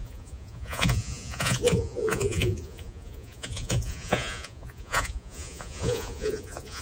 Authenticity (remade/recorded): remade